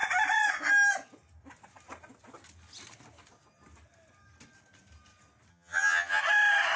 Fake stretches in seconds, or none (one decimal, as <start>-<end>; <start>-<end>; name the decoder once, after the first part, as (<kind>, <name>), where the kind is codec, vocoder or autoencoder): 5.5-6.2 (vocoder, HiFi-GAN)